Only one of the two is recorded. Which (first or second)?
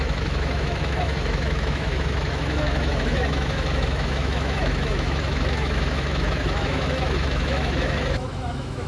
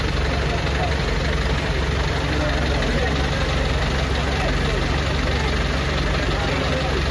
second